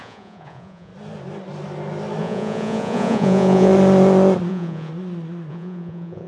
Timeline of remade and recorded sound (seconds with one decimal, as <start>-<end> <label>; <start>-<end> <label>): 0.0-0.9 remade; 0.9-2.2 recorded; 2.2-3.7 remade; 3.7-4.5 recorded; 4.5-4.9 remade; 4.9-5.5 recorded; 5.5-6.3 remade